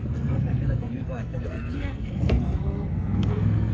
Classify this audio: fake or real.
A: fake